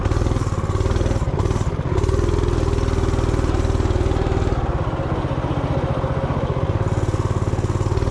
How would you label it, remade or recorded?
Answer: recorded